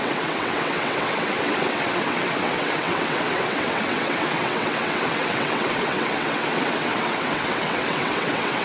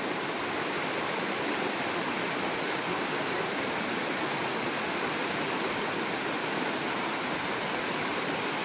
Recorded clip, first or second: second